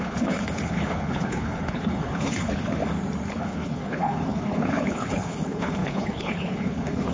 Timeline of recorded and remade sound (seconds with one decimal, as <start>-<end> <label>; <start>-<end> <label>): 0.0-2.8 remade; 2.8-3.3 recorded; 3.3-7.1 remade